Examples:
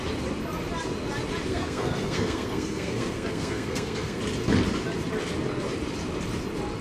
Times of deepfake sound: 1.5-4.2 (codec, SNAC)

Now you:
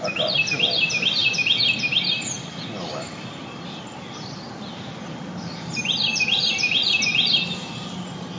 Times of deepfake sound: none

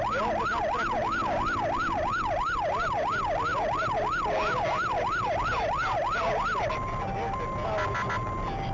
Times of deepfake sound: 1.2-3.1 (vocoder, BigVGAN v2)

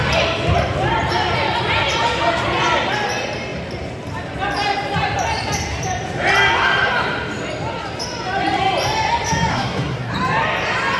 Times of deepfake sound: 9.5-10.1 (codec, SNAC)